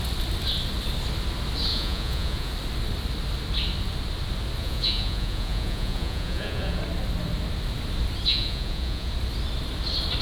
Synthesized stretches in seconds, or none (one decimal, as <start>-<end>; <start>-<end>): 1.7-2.5; 4.6-6.8; 8.3-9.1